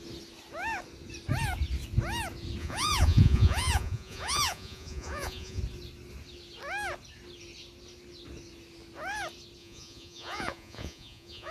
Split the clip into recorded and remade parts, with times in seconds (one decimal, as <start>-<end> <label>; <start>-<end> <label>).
0.0-2.6 recorded; 2.6-5.6 remade; 5.6-9.6 recorded; 9.6-11.5 remade